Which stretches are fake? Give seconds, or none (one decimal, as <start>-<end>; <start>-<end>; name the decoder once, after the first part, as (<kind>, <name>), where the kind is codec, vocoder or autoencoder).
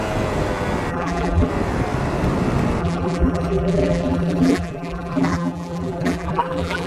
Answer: 0.9-1.5 (vocoder, BigVGAN v2); 2.8-6.9